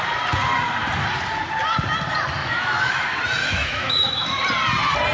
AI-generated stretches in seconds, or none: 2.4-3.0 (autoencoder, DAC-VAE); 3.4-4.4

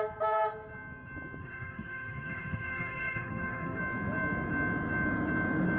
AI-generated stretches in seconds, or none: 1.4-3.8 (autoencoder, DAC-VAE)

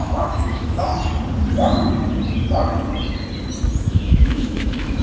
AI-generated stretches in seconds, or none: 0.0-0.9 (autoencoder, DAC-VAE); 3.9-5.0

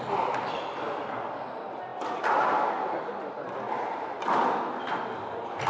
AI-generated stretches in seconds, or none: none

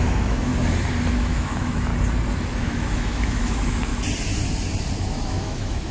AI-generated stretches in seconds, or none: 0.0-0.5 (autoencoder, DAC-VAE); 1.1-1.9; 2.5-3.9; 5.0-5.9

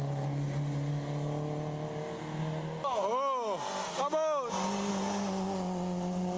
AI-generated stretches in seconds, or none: none

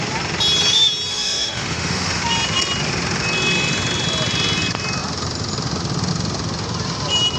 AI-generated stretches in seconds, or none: 1.1-2.2 (autoencoder, DAC-VAE)